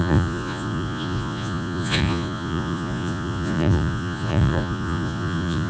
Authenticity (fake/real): fake